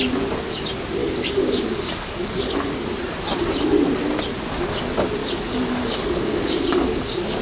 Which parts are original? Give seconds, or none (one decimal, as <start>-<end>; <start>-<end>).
0.0-1.0; 2.5-5.2